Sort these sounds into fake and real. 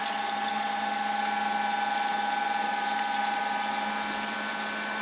real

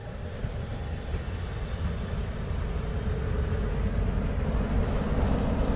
real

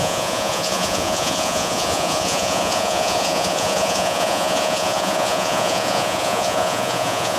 fake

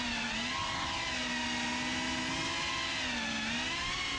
real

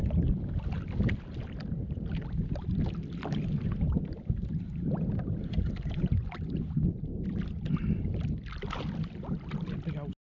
real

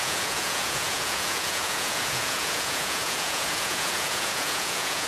fake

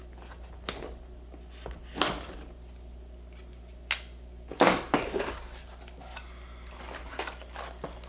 real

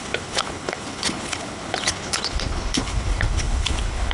fake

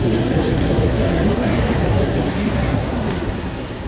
fake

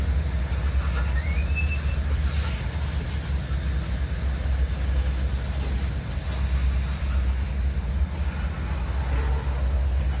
real